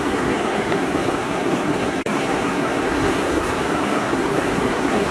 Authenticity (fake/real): fake